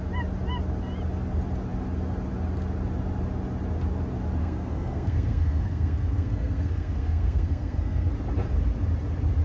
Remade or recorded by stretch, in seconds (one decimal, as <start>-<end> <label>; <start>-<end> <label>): 0.0-4.4 recorded; 4.4-8.1 remade; 8.1-9.4 recorded